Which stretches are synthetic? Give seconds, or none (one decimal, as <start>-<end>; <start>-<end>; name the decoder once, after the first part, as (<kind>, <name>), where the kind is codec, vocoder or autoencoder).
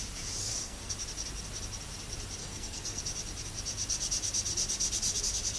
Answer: 0.4-0.9 (codec, SNAC); 2.4-3.0